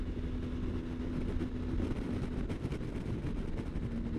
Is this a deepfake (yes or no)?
no